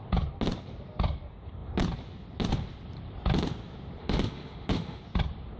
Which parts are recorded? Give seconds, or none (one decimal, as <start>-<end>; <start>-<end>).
0.0-4.0; 5.0-5.6